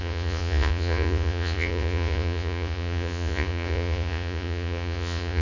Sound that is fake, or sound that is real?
fake